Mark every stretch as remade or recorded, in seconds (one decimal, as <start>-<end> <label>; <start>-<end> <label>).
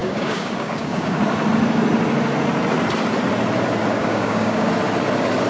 0.0-1.2 remade; 1.2-4.0 recorded; 4.0-4.7 remade; 4.7-5.5 recorded